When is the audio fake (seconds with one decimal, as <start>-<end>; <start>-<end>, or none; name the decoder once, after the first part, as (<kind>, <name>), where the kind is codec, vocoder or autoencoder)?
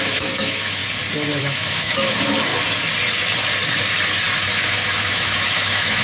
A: 0.0-0.8 (autoencoder, DAC-VAE); 1.4-2.5; 4.7-6.0